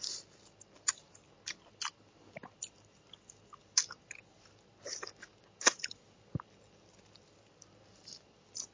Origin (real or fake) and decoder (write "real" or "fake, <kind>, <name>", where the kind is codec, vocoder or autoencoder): real